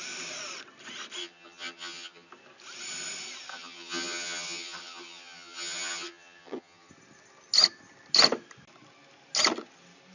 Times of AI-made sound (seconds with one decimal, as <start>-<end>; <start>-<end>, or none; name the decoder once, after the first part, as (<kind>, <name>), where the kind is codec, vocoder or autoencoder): 1.2-2.3 (vocoder, HiFi-GAN); 3.5-6.9